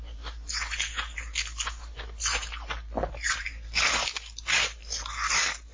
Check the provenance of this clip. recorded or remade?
recorded